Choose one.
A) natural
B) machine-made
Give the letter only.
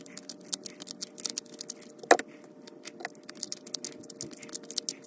A